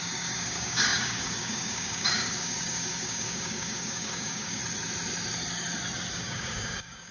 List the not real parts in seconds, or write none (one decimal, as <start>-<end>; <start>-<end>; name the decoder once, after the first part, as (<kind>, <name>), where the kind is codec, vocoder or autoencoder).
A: 0.0-4.6 (codec, DAC); 6.1-7.1